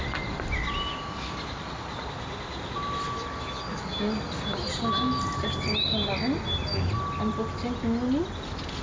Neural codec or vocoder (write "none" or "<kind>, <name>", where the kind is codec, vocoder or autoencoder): none